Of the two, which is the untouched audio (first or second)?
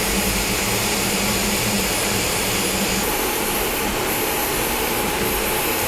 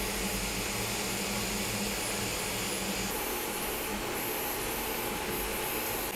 second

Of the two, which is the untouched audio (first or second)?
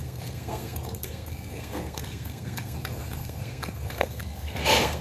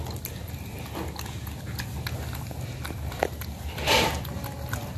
second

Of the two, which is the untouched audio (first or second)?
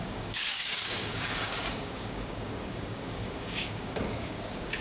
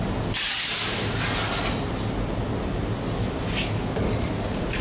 second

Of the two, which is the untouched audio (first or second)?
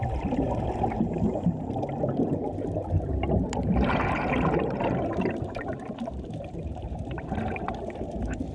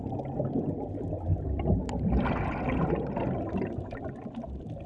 second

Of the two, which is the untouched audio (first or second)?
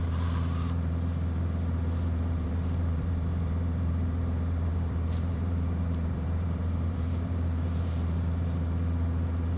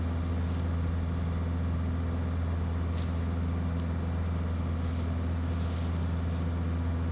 second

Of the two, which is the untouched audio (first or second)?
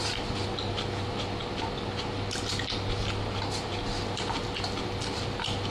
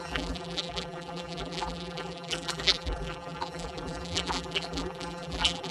first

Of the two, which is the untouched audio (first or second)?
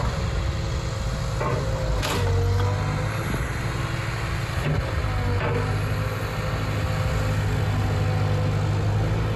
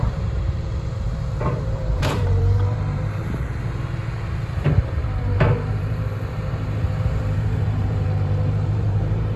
first